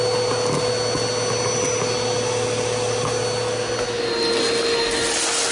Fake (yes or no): no